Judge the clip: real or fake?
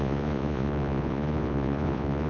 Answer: fake